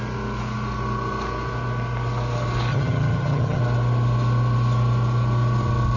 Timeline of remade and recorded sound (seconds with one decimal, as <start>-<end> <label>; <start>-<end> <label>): 0.0-2.7 recorded; 2.7-3.6 remade; 3.6-6.0 recorded